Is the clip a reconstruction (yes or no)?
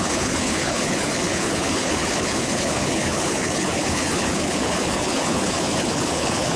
yes